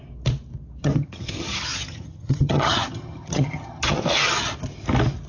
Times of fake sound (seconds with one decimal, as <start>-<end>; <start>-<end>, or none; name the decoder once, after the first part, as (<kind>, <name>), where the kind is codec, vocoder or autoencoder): 0.8-4.0 (vocoder, HiFi-GAN)